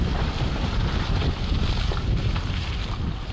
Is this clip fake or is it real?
real